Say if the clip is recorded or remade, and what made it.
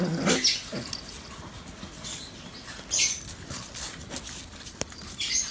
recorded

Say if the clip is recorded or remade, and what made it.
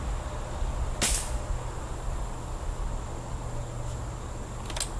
recorded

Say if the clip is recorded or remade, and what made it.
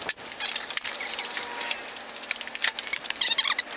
recorded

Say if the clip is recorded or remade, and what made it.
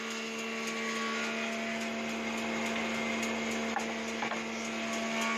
recorded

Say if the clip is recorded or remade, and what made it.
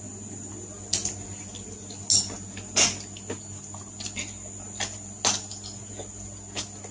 recorded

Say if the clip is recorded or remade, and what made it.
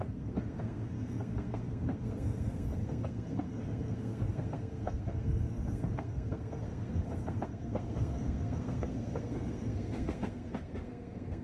remade, codec, SNAC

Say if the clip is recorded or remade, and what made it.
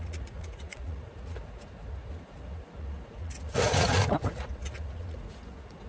remade, vocoder, Vocos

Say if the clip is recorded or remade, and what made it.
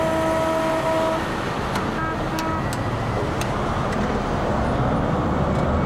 recorded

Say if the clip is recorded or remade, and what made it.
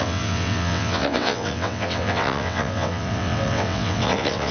remade, vocoder, WaveNeXt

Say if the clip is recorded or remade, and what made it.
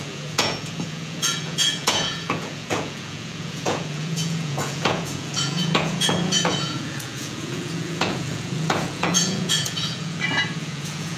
remade, vocoder, Vocos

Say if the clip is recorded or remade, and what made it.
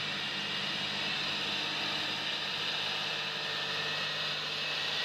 recorded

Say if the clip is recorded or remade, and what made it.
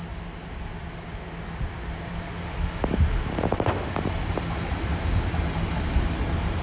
recorded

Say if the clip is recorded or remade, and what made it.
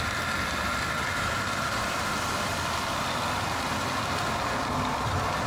recorded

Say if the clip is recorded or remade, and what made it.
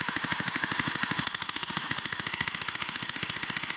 remade, autoencoder, DAC-VAE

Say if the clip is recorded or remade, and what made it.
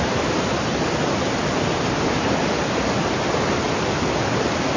recorded